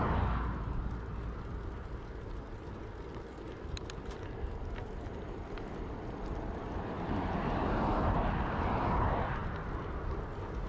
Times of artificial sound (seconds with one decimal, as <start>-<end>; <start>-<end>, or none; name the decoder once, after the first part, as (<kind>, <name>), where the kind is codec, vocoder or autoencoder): none